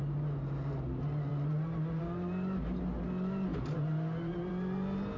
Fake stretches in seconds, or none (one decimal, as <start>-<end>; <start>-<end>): none